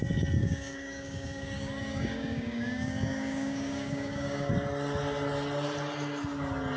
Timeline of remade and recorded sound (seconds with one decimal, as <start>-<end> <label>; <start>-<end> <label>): 0.0-0.4 recorded; 0.4-4.5 remade; 4.5-6.8 recorded